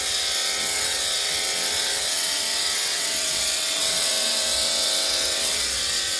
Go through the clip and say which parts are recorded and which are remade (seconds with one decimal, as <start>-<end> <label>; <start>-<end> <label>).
0.0-6.2 remade